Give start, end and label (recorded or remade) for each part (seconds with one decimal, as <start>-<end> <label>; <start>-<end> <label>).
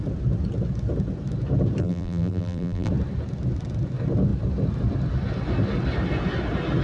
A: 0.0-1.8 recorded; 1.8-2.9 remade; 2.9-6.8 recorded